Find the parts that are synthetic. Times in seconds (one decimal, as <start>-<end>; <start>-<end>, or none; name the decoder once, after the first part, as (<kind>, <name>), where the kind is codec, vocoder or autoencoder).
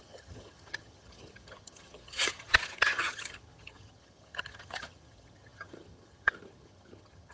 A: 0.0-7.3 (vocoder, HiFi-GAN)